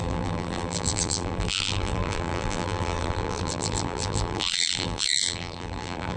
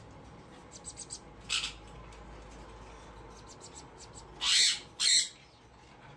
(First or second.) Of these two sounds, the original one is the second